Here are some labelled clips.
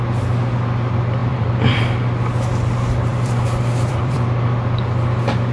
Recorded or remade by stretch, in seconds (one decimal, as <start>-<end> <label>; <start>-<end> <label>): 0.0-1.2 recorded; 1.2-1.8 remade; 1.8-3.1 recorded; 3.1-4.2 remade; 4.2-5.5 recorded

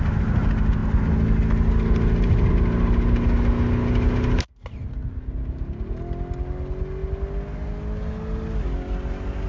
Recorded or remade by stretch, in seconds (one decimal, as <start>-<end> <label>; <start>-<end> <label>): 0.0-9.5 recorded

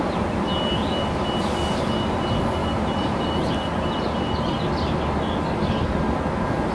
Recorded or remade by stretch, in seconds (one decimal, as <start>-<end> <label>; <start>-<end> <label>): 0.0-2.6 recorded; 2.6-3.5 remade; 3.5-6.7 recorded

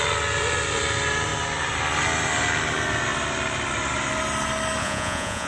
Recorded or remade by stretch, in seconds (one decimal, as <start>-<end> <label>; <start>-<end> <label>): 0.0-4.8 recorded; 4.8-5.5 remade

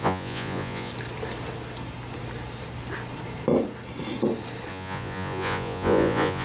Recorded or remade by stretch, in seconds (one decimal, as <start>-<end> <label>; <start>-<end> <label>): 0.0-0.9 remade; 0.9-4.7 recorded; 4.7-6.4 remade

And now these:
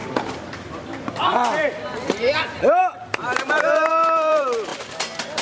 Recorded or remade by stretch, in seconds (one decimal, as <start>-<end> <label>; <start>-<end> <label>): 0.0-2.8 remade; 2.8-3.9 recorded; 3.9-4.7 remade; 4.7-5.4 recorded